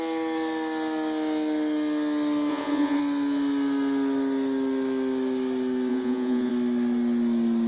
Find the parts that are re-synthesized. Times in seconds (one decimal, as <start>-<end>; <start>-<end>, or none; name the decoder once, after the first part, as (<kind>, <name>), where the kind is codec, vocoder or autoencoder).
2.5-3.0 (vocoder, Vocos); 5.9-6.5